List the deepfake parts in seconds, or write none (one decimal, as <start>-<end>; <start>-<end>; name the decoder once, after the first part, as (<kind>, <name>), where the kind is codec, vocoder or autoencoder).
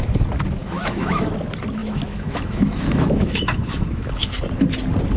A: 0.6-1.3 (autoencoder, DAC-VAE); 1.8-4.3